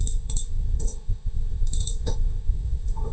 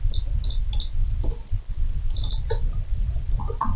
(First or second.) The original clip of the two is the second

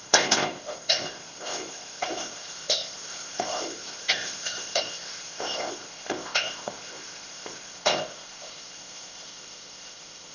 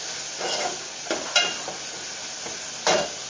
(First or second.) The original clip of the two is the second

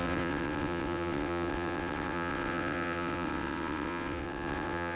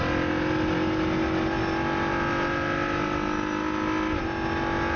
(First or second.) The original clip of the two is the second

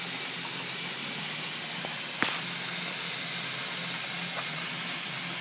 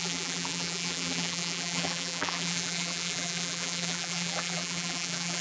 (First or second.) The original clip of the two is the first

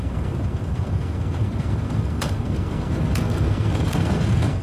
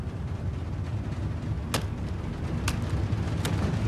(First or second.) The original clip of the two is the second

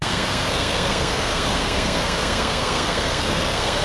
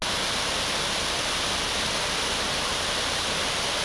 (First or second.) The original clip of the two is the second